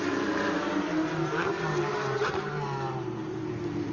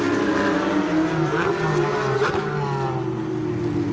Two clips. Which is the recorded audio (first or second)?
second